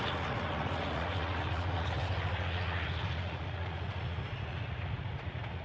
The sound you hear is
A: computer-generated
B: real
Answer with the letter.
A